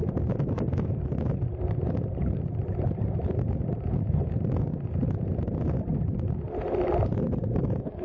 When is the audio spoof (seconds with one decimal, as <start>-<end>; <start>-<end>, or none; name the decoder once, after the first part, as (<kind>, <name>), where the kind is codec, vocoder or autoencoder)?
0.0-3.8 (vocoder, BigVGAN v2)